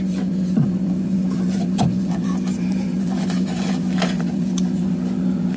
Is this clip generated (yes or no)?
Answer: yes